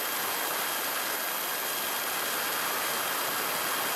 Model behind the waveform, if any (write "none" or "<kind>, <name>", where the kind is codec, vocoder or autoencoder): none